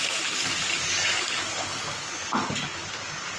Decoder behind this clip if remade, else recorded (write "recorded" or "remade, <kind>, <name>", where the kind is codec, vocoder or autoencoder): remade, codec, DAC